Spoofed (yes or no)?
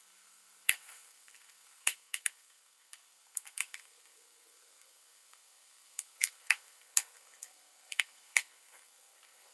yes